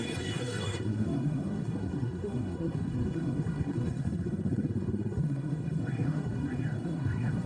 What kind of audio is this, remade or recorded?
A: remade